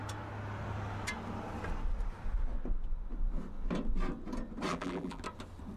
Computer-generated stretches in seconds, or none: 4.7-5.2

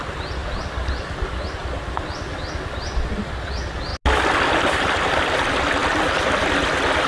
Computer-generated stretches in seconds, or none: none